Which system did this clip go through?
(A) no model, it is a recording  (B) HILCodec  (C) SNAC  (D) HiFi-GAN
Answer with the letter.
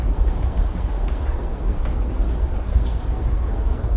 C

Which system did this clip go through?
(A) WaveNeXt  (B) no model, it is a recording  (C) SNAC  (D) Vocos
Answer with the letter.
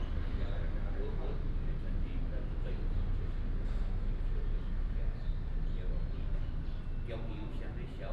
B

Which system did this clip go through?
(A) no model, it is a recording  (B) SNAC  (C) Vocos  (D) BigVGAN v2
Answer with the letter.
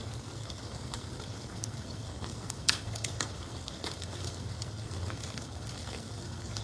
B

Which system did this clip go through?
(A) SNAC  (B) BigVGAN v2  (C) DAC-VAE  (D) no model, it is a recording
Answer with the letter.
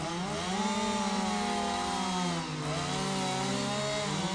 D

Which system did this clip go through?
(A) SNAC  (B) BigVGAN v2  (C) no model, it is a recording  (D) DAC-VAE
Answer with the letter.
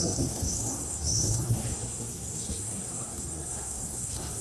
A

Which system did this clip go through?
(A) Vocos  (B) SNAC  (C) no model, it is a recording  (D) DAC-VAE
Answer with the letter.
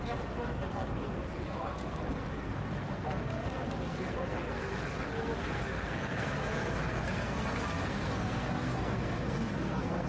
B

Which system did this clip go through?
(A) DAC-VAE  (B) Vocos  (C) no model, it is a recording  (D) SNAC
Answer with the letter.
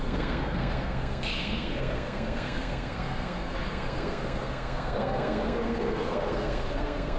D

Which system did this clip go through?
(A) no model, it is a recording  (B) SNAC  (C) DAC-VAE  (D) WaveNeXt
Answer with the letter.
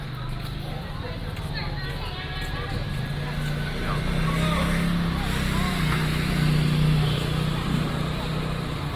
A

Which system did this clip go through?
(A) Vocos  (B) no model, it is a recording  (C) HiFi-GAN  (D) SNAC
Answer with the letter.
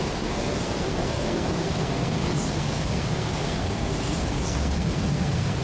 D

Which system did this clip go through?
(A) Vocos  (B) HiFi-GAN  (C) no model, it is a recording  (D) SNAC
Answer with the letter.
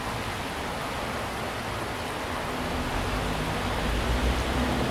C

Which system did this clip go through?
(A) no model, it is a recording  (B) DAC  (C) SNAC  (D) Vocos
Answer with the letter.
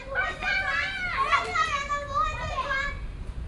A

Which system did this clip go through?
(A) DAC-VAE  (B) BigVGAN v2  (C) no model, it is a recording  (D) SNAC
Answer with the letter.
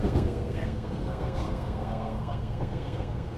D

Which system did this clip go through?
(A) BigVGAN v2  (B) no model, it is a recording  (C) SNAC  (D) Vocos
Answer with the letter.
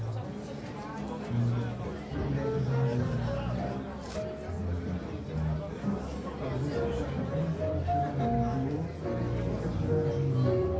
B